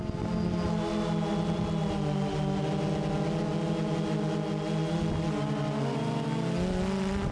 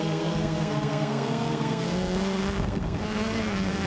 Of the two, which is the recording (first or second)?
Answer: first